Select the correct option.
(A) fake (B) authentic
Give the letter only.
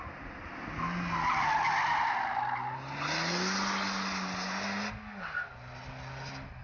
B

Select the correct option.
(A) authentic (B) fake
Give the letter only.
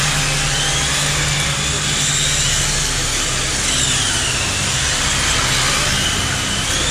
A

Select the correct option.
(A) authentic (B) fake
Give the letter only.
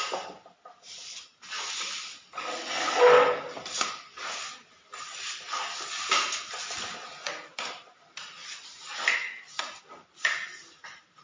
A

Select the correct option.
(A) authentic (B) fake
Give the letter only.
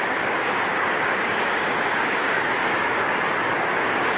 B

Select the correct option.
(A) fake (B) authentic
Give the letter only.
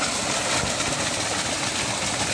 B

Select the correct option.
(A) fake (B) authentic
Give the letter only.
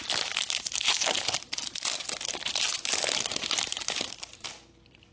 B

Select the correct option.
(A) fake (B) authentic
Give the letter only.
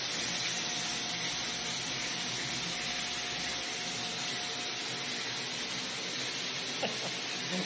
B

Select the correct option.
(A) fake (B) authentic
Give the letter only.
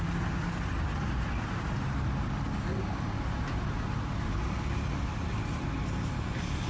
B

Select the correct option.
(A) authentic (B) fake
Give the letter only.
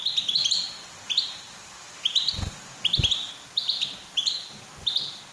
A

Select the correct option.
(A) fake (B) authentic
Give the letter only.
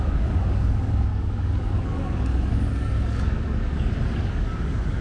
A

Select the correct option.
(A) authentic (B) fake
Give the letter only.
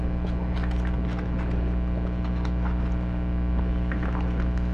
A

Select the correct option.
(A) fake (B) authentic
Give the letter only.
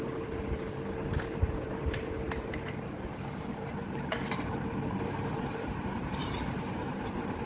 A